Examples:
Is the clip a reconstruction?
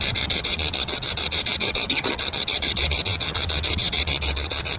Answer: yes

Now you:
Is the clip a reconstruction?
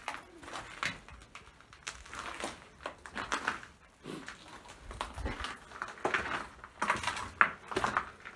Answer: no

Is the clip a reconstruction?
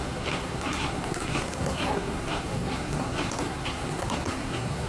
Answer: yes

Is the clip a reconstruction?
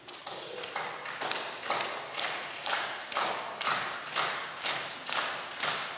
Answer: no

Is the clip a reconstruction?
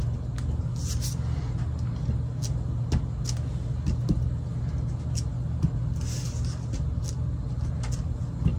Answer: no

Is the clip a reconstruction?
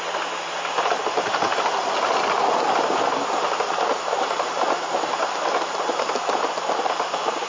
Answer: no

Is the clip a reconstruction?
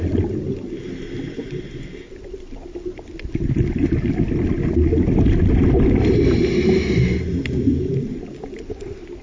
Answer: no